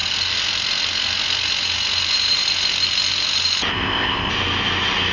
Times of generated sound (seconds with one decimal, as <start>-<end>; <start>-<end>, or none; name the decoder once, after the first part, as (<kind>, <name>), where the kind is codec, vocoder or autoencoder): 3.7-4.3 (codec, ZipCodec)